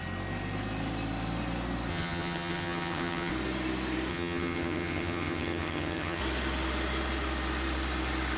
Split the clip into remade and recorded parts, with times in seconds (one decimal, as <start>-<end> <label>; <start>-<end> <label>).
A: 0.0-1.9 recorded; 1.9-3.3 remade; 3.3-4.1 recorded; 4.1-6.2 remade; 6.2-8.4 recorded